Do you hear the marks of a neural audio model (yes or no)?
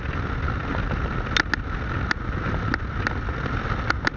no